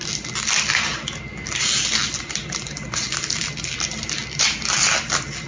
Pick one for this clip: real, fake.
real